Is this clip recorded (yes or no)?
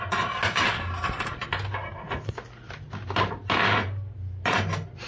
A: yes